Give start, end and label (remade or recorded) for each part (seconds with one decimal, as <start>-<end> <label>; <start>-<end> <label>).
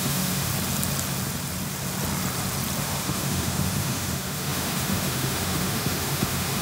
0.0-0.5 remade; 0.5-2.8 recorded; 2.8-6.6 remade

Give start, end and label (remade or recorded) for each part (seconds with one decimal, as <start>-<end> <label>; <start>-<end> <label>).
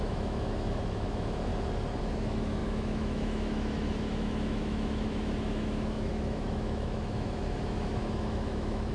0.0-1.5 remade; 1.5-2.0 recorded; 2.0-8.9 remade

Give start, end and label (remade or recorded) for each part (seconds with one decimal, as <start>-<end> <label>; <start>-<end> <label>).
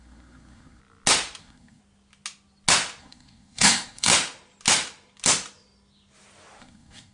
0.0-0.8 remade; 0.8-1.4 recorded; 1.4-1.8 remade; 1.8-3.0 recorded; 3.0-4.1 remade; 4.1-6.6 recorded; 6.6-7.1 remade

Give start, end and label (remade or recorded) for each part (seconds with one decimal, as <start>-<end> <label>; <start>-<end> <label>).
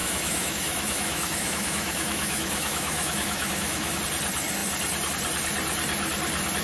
0.0-4.0 remade; 4.0-6.6 recorded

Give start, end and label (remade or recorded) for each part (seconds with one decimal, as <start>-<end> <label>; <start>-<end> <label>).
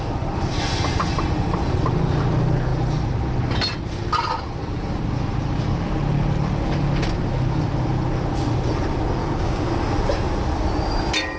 0.0-9.2 recorded; 9.2-9.7 remade; 9.7-11.4 recorded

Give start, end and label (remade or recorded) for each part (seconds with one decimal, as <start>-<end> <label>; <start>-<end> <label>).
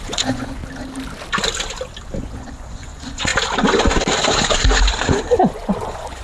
0.0-0.6 remade; 0.6-2.2 recorded; 2.2-3.3 remade; 3.3-5.0 recorded; 5.0-6.2 remade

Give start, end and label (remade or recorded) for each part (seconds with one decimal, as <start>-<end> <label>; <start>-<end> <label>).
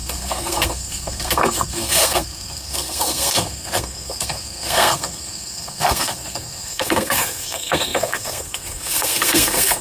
0.0-9.8 remade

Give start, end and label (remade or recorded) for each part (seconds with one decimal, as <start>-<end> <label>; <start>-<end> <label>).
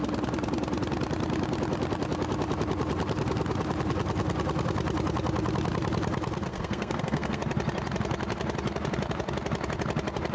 0.0-6.5 recorded; 6.5-7.4 remade; 7.4-10.3 recorded